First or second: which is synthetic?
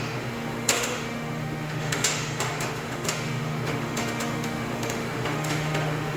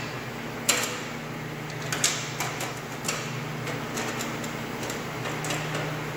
first